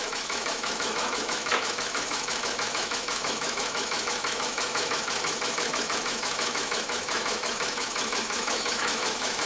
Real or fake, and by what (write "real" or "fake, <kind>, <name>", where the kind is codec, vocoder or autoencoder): fake, autoencoder, DAC-VAE